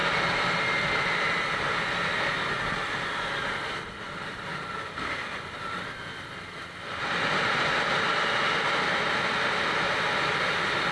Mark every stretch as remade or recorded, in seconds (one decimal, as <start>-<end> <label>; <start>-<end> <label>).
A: 0.0-10.9 recorded